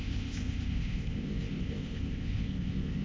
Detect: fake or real fake